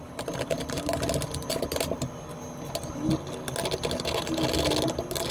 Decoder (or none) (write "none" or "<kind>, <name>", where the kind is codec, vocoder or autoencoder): none